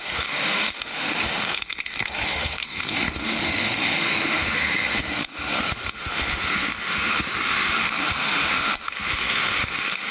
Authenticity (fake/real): fake